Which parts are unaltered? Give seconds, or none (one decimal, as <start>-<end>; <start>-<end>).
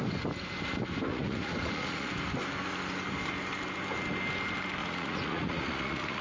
0.0-1.1; 2.1-4.8